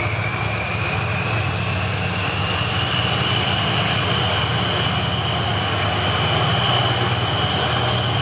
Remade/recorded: recorded